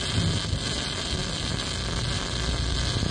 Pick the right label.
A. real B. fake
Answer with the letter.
A